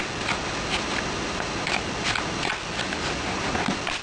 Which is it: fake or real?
real